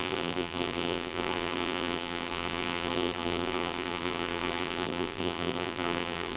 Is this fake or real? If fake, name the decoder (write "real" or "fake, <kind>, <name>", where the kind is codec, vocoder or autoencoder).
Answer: fake, vocoder, BigVGAN v2